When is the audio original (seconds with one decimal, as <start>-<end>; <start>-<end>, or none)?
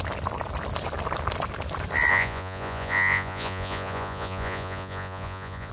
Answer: 0.0-2.1